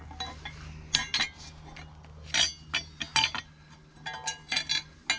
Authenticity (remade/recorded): recorded